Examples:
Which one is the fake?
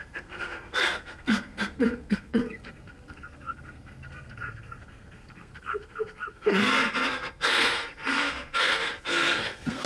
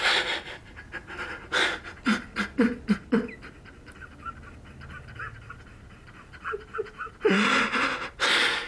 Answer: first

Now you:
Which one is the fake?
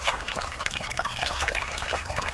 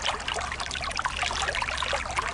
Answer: first